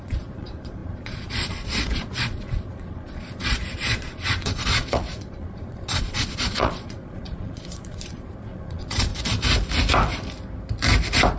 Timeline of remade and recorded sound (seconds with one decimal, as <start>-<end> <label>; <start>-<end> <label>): 0.0-9.1 remade; 9.1-11.4 recorded